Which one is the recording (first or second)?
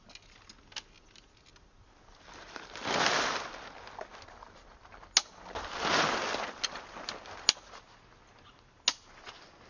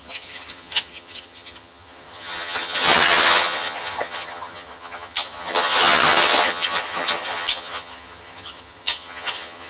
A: first